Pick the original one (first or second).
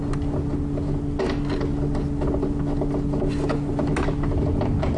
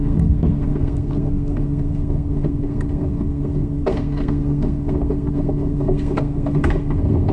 first